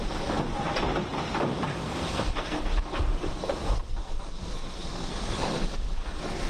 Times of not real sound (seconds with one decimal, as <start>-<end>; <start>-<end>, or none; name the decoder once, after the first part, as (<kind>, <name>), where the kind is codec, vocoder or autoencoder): 1.7-2.7 (codec, SNAC); 3.6-6.5